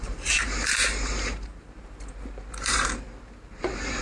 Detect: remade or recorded remade